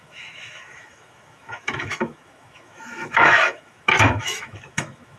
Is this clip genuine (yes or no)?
no